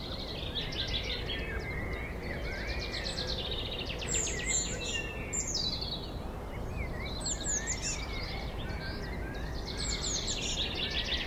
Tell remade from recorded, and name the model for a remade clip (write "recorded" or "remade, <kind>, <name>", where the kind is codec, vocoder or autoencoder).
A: recorded